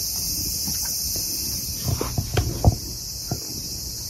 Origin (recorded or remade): recorded